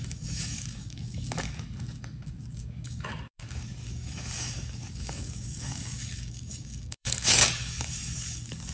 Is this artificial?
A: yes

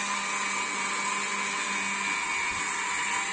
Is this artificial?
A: no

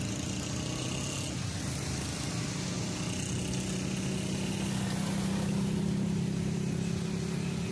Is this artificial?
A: no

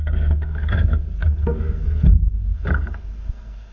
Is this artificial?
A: yes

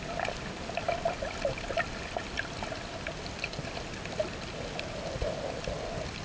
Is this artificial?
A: no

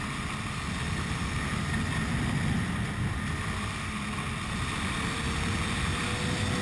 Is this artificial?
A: no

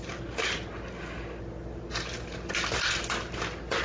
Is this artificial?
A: no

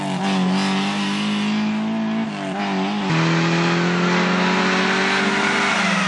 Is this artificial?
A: no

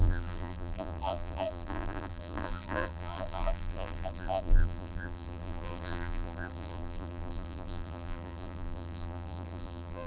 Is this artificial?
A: yes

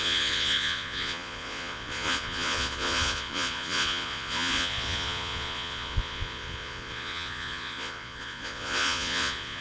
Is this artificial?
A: yes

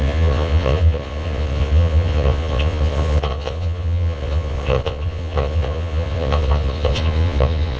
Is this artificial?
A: yes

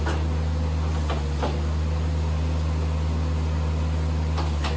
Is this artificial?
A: no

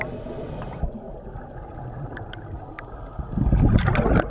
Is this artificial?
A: no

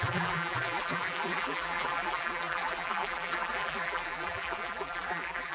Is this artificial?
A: yes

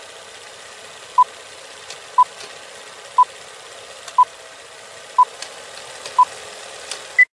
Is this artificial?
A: no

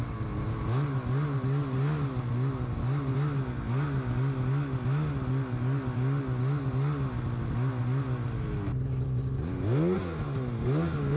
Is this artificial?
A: no